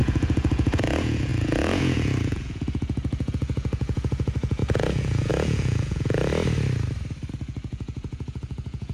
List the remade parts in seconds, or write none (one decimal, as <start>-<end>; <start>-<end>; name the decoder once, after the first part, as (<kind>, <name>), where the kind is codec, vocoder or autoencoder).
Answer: 0.0-6.3 (vocoder, Vocos); 7.3-8.9